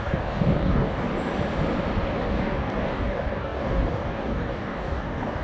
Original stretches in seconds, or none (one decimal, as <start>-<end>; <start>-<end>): 1.1-2.2

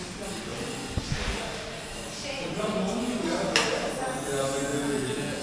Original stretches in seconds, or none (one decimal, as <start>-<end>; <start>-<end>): 0.0-4.7

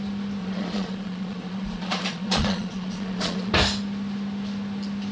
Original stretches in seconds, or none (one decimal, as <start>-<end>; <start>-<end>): 0.0-0.4; 3.5-5.1